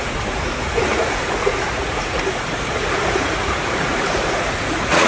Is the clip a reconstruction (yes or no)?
yes